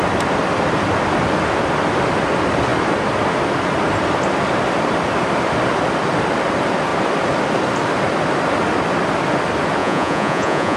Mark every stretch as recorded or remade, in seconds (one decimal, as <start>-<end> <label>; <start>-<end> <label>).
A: 0.0-9.8 recorded; 9.8-10.8 remade